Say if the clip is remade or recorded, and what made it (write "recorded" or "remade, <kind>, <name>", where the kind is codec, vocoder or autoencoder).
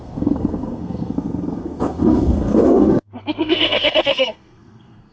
remade, codec, SNAC